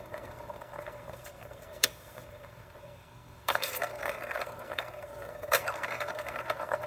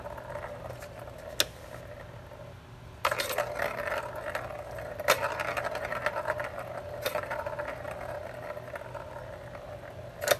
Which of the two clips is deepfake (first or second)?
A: first